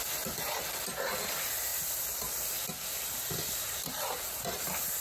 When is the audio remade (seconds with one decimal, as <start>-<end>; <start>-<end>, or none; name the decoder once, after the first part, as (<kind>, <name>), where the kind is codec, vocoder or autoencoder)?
1.7-4.6 (vocoder, BigVGAN v2)